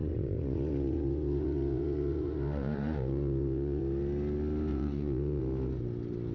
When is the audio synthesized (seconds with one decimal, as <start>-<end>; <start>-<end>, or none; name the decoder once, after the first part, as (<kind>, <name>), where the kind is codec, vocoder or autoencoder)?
0.0-3.8 (vocoder, Vocos); 4.7-5.4